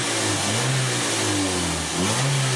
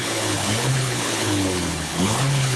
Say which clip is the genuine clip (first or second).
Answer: first